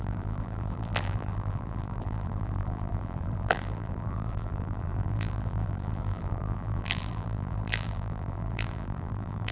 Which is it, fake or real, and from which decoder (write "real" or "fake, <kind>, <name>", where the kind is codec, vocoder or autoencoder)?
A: fake, vocoder, BigVGAN v2